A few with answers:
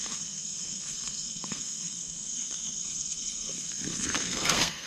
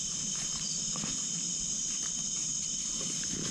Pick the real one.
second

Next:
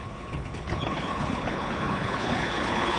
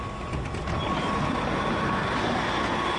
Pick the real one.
second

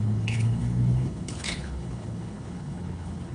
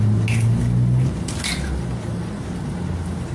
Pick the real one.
second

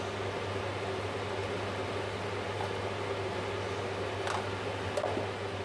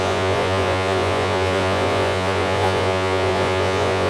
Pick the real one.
first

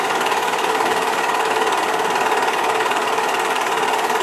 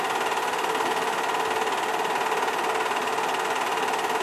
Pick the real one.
second